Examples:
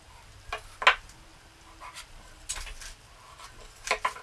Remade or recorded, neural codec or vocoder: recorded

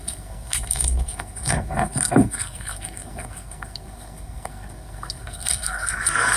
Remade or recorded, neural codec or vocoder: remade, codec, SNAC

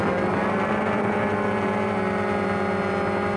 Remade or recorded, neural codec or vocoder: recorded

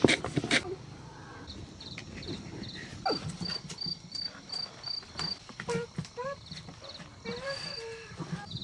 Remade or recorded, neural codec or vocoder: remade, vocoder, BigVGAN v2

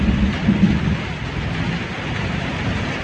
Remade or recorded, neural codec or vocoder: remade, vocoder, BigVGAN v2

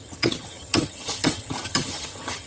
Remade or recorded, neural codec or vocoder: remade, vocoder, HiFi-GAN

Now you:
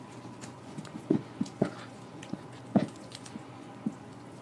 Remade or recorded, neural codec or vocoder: remade, vocoder, Vocos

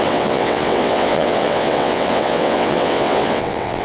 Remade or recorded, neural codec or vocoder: remade, vocoder, WaveNeXt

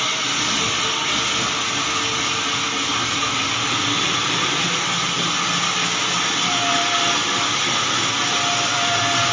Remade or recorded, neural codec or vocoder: recorded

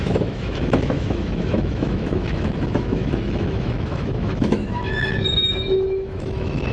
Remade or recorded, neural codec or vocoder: remade, autoencoder, DAC-VAE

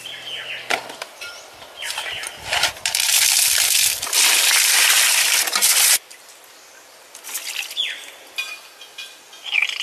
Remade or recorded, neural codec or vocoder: recorded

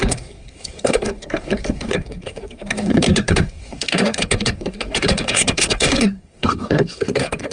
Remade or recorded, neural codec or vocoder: remade, codec, SNAC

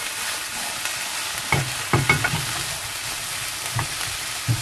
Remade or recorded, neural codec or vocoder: recorded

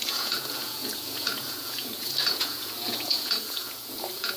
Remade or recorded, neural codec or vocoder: remade, vocoder, Vocos